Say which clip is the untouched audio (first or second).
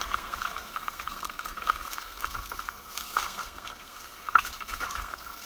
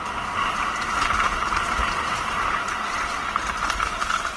second